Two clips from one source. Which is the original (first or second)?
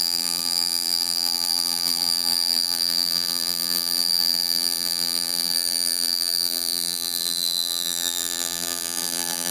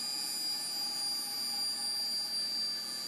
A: second